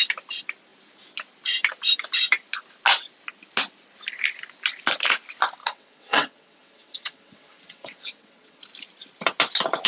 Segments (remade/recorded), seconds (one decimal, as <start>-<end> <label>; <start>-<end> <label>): 0.0-5.6 recorded; 5.6-8.6 remade; 8.6-9.9 recorded